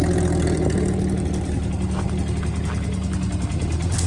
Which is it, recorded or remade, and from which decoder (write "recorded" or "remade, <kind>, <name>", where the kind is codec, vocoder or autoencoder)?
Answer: recorded